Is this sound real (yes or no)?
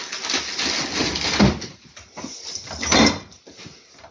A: yes